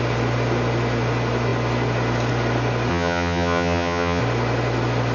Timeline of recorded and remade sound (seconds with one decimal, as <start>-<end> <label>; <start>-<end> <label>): 0.0-2.9 recorded; 2.9-4.2 remade; 4.2-5.1 recorded